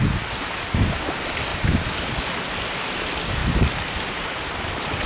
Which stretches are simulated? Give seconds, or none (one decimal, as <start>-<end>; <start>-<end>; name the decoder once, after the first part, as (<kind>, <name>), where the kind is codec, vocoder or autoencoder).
none